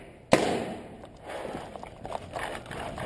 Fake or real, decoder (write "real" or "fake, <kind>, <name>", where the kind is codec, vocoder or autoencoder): real